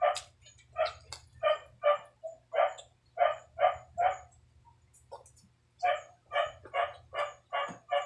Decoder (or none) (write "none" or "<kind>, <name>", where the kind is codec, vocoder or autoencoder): none